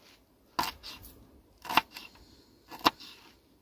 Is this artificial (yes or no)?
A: no